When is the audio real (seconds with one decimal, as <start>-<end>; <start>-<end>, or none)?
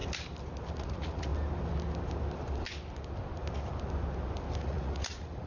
0.0-0.8; 1.3-4.6